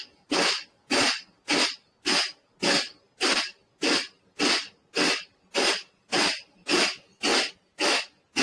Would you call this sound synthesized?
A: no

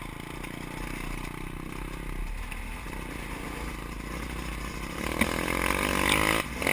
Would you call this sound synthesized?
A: no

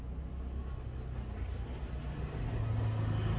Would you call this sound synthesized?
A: no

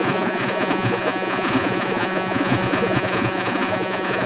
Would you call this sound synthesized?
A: yes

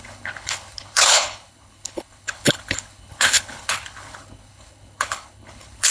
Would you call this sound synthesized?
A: yes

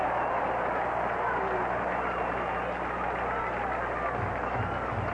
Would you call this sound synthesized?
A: no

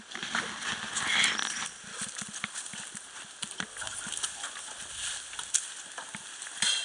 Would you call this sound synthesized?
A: no